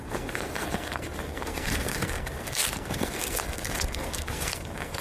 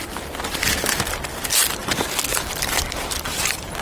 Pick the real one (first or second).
second